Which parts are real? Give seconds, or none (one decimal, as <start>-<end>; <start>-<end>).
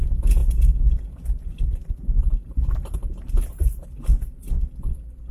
0.0-5.3